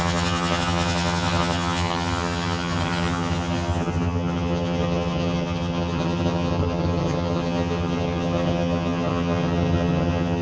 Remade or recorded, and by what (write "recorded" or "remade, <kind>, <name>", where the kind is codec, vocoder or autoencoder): remade, vocoder, HiFi-GAN